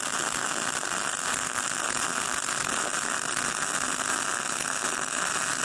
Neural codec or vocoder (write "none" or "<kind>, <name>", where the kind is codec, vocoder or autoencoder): none